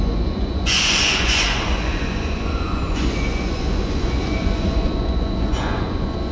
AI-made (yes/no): yes